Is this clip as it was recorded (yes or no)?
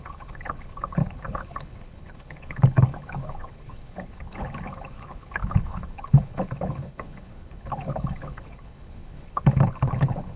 no